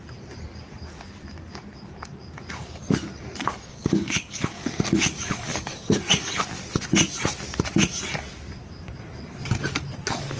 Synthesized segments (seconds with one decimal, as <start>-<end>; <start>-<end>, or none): 3.7-6.3